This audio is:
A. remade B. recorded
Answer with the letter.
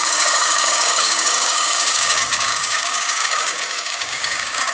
A